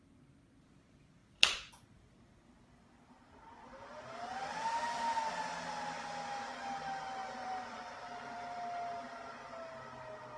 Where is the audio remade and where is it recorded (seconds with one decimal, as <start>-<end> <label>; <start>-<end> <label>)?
0.0-1.2 recorded; 1.2-1.7 remade; 1.7-7.2 recorded; 7.2-8.6 remade; 8.6-10.4 recorded